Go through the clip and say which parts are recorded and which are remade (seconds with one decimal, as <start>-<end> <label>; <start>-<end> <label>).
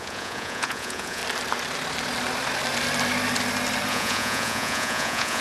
0.0-1.2 remade; 1.2-3.9 recorded; 3.9-5.4 remade